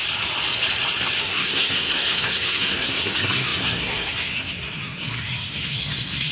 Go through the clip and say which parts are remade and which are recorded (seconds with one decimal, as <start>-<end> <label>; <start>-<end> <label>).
0.0-1.2 recorded; 1.2-6.3 remade